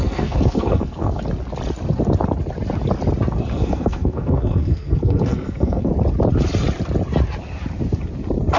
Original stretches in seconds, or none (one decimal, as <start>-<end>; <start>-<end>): 1.2-3.5; 5.9-8.6